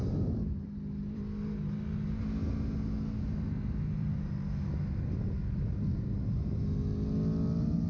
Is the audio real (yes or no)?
yes